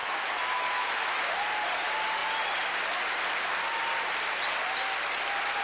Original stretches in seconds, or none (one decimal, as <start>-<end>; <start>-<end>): 1.2-5.6